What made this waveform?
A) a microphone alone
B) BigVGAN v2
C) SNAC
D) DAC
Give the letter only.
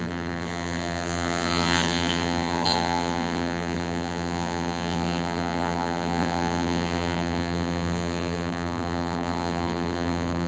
B